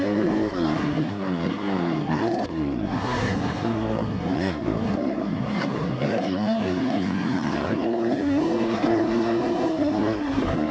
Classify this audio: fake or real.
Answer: fake